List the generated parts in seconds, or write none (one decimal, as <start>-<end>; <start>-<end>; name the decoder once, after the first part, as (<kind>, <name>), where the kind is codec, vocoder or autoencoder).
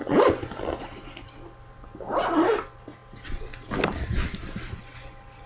none